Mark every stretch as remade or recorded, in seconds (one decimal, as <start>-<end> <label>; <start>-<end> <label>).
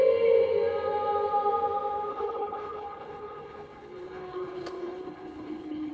0.0-2.1 recorded; 2.1-5.9 remade